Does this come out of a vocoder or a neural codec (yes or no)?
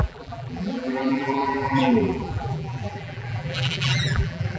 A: yes